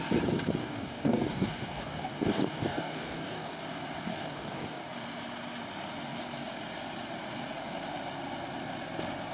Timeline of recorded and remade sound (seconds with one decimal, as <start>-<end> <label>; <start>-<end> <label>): 0.0-0.6 recorded; 0.6-3.6 remade; 3.6-4.1 recorded; 4.1-4.8 remade; 4.8-9.3 recorded